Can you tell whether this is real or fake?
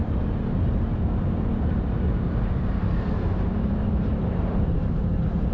fake